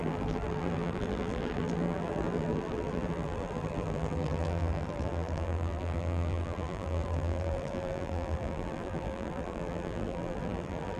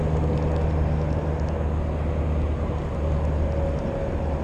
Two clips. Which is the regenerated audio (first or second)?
first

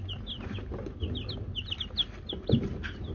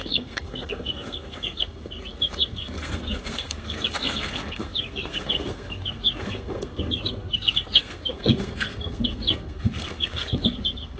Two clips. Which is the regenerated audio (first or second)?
second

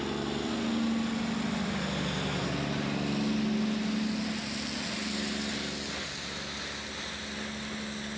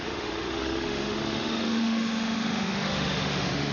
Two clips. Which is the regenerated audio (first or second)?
second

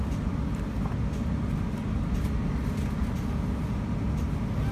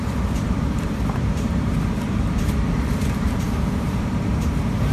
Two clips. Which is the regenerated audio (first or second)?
second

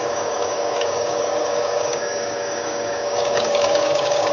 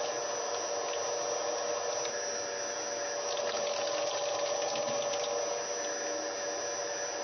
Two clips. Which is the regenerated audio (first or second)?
first